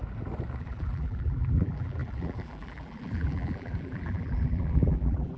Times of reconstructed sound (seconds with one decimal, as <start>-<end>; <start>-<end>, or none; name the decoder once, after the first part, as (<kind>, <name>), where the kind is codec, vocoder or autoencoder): 0.6-5.4 (vocoder, BigVGAN v2)